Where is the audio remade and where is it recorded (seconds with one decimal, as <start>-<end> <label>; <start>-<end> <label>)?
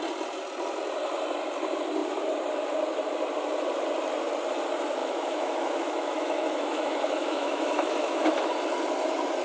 0.0-5.0 recorded; 5.0-8.5 remade; 8.5-9.4 recorded